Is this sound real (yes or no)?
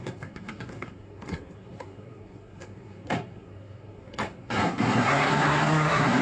no